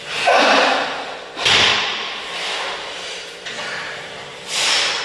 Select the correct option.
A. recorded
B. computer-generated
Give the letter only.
B